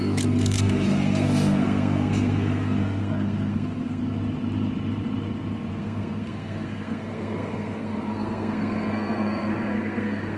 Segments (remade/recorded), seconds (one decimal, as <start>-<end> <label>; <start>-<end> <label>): 0.0-4.0 remade; 4.0-5.7 recorded; 5.7-10.4 remade